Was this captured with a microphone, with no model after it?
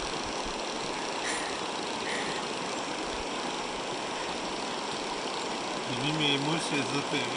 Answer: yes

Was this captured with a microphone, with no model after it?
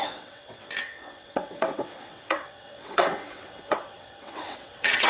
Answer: no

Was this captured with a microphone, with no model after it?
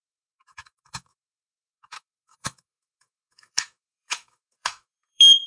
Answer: no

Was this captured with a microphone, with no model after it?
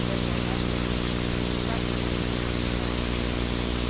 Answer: yes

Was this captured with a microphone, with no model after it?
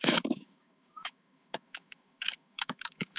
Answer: no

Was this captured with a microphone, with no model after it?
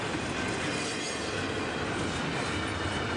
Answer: yes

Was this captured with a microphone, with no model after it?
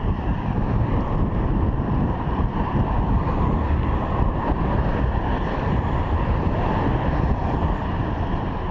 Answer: no